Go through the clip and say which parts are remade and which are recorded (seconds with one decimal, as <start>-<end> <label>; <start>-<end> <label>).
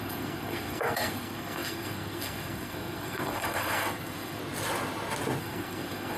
0.0-4.4 remade; 4.4-5.4 recorded; 5.4-6.2 remade